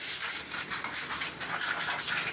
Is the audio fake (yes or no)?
no